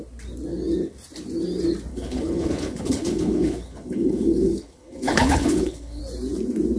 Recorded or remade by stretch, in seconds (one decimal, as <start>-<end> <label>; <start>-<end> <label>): 0.0-1.9 recorded; 1.9-6.0 remade; 6.0-6.8 recorded